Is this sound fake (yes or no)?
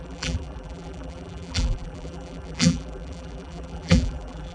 yes